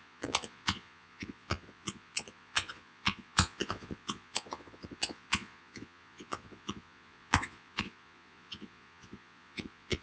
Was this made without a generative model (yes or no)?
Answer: no